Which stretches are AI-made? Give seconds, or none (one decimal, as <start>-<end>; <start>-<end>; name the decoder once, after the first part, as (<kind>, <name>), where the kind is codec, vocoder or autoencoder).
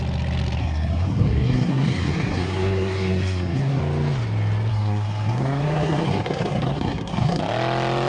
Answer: 0.6-3.8 (codec, SNAC); 4.7-7.4